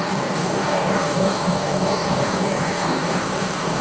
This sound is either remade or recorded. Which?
remade